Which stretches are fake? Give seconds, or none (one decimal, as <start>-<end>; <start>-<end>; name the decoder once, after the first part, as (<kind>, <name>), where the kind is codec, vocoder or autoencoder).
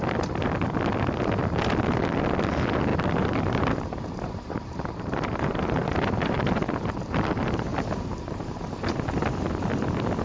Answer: 2.9-6.5 (vocoder, BigVGAN v2); 7.7-8.6